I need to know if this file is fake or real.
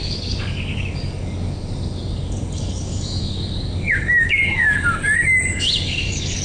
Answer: fake